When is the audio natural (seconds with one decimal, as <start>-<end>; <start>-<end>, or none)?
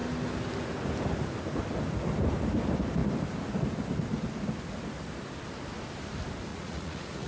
0.0-6.5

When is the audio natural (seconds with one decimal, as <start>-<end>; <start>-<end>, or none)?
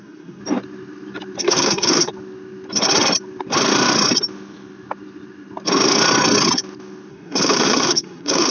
0.4-1.4; 2.1-7.1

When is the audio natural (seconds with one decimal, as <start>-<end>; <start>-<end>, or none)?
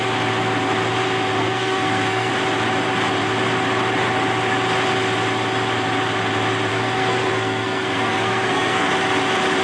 0.0-1.4; 2.3-6.7; 8.9-9.6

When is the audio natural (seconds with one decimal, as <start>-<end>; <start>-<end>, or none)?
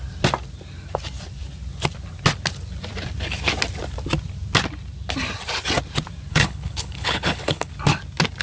0.0-6.3; 7.7-8.4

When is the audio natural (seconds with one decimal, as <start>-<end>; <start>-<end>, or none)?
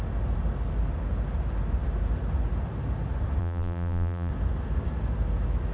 0.0-3.4; 4.3-5.7